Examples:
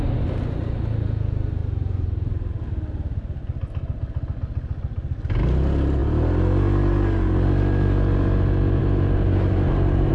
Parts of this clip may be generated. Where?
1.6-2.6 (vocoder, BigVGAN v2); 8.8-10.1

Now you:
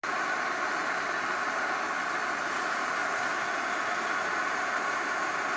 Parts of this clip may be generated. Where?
none

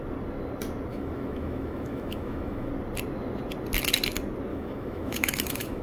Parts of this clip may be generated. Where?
0.9-2.7 (autoencoder, DAC-VAE); 4.5-5.8

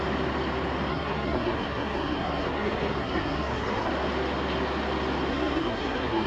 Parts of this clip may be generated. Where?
0.9-3.9 (codec, SNAC); 5.3-6.3